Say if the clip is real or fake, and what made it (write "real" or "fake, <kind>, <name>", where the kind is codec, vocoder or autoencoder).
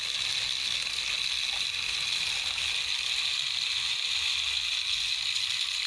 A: real